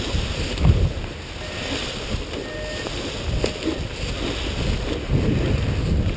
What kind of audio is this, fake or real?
real